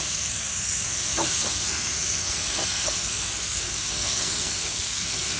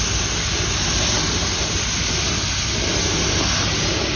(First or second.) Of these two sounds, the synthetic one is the first